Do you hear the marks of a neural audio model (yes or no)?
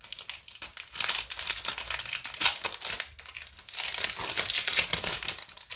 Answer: no